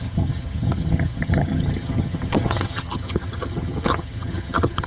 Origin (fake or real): fake